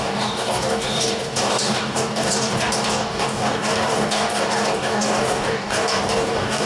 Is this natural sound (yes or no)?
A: no